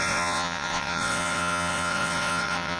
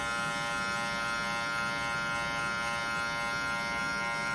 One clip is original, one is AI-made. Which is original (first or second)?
second